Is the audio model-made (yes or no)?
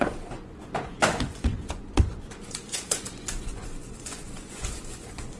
yes